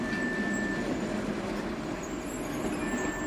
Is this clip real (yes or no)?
yes